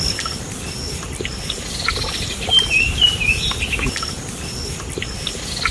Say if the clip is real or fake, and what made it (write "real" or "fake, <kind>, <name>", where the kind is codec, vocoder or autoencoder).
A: fake, vocoder, BigVGAN v2